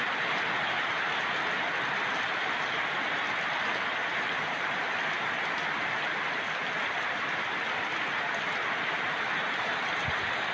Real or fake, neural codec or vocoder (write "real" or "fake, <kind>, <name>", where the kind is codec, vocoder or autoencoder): real